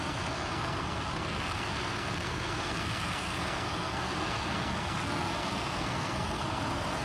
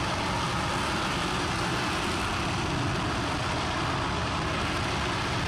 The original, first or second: second